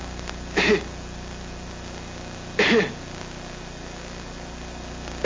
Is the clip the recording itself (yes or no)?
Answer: yes